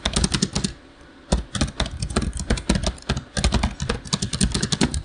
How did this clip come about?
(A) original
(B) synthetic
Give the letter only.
A